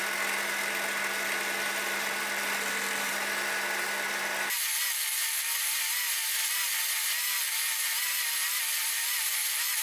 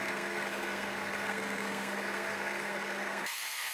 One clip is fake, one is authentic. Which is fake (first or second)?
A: second